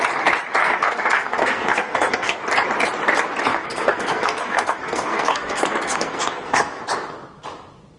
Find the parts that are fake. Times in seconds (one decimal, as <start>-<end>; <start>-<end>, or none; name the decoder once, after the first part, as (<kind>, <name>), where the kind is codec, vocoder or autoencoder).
0.6-2.4 (codec, SNAC); 3.5-6.8

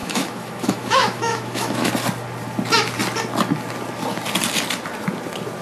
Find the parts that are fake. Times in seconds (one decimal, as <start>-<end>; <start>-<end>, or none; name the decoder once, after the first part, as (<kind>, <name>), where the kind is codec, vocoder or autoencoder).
0.0-1.9 (autoencoder, DAC-VAE)

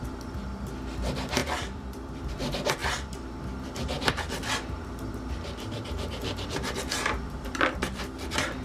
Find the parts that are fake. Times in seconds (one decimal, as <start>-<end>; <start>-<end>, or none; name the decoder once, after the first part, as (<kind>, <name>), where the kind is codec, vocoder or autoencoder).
1.4-2.3 (vocoder, BigVGAN v2); 2.8-8.0

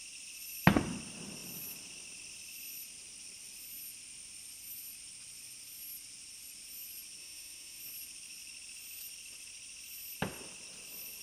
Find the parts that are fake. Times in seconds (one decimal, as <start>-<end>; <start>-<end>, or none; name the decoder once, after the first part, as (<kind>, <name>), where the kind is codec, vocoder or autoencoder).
7.2-7.8 (autoencoder, DAC-VAE)